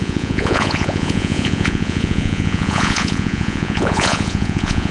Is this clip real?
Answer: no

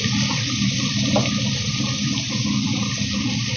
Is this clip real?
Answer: no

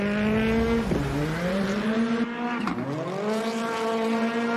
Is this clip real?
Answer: yes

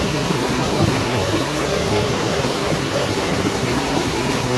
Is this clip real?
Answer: no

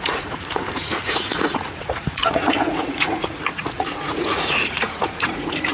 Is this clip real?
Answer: no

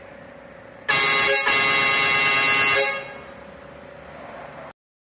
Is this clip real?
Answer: yes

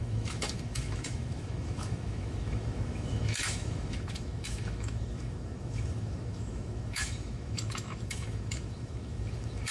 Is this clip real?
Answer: no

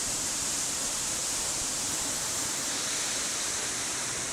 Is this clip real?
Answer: no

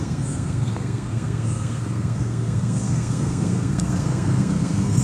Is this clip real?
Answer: no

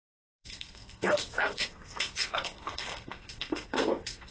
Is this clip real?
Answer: no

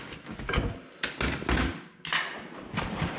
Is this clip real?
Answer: yes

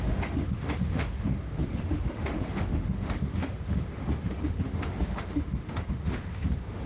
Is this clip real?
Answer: no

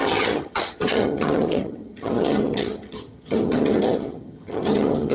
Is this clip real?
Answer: no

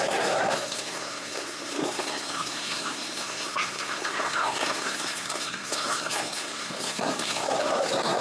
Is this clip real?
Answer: no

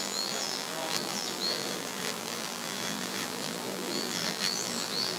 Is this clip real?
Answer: no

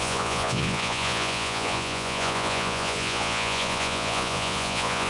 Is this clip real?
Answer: no